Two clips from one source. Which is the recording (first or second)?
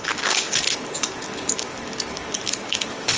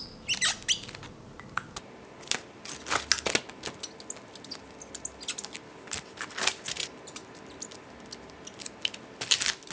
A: second